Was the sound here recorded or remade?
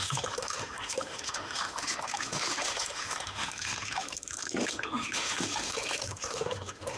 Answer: remade